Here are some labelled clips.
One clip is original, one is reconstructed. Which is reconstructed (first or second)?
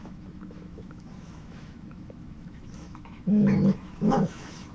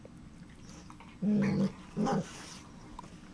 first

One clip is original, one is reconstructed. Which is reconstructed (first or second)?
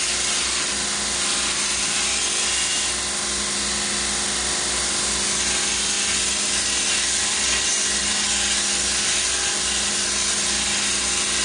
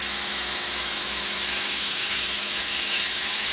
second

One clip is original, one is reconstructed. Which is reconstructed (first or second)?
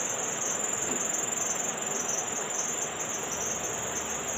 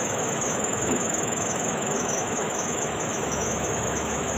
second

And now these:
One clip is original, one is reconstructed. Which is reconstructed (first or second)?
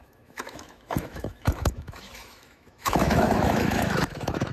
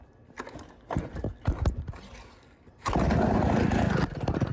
first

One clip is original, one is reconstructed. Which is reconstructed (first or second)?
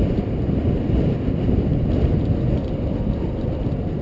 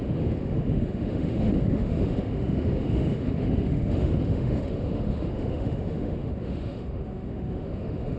second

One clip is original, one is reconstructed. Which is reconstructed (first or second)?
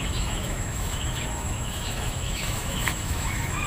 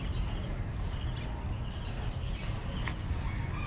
first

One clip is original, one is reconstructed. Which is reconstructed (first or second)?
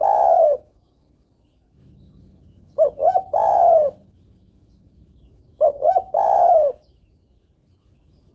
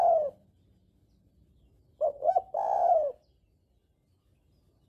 first